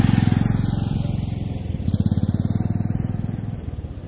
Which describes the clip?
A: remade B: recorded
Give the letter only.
B